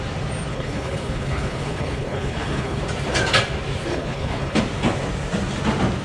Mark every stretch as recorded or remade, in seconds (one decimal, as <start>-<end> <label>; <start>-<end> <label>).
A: 0.0-0.5 recorded; 0.5-2.8 remade; 2.8-3.9 recorded; 3.9-4.6 remade; 4.6-6.0 recorded